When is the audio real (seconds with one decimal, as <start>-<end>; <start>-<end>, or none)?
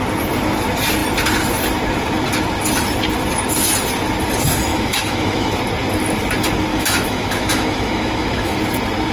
0.0-4.7; 5.6-6.7; 8.6-9.1